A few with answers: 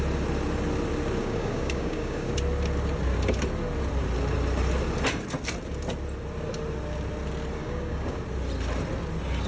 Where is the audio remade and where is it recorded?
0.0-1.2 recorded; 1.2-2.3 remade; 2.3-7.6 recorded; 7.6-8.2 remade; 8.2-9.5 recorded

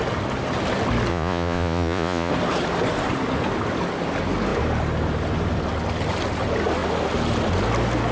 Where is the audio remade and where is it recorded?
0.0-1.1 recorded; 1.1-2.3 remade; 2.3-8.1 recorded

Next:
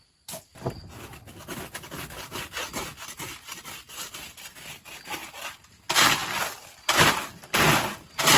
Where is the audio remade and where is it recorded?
0.0-8.4 recorded

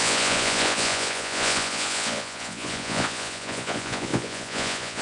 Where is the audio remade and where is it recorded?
0.0-5.0 remade